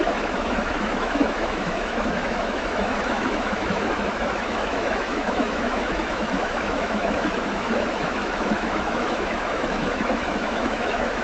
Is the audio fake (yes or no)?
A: yes